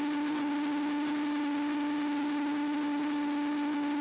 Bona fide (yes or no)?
yes